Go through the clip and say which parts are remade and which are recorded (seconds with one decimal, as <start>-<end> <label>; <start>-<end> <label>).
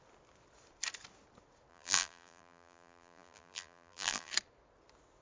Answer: 0.0-1.7 recorded; 1.7-4.3 remade; 4.3-5.2 recorded